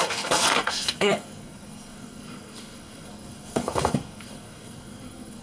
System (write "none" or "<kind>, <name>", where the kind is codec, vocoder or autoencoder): codec, SNAC